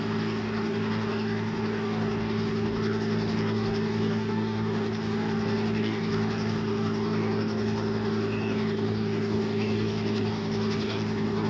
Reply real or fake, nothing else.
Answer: fake